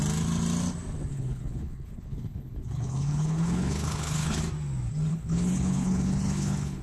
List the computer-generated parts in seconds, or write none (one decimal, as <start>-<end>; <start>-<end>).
1.1-4.4; 5.1-6.8